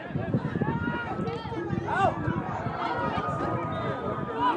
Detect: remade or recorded recorded